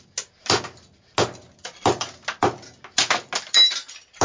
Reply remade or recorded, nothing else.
recorded